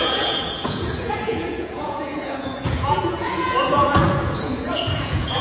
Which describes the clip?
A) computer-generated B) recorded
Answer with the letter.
A